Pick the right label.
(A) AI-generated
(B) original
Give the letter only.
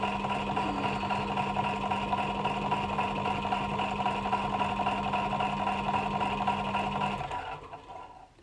B